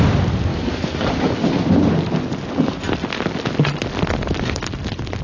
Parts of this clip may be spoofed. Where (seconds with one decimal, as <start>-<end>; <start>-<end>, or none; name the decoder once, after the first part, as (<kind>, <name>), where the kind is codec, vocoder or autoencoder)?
none